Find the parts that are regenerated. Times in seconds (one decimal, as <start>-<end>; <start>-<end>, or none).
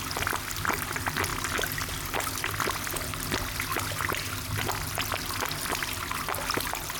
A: none